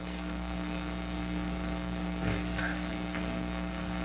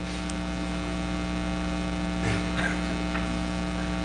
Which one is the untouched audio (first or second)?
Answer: second